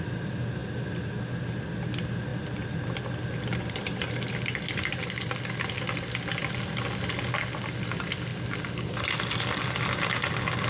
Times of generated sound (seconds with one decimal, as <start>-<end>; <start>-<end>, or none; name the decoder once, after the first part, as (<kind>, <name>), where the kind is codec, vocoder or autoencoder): none